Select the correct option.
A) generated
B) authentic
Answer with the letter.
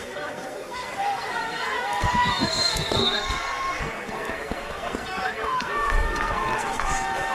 A